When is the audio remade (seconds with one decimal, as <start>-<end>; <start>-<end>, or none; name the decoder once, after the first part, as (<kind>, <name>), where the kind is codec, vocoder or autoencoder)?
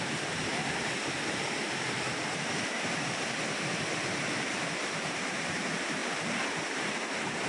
0.0-7.5 (vocoder, BigVGAN v2)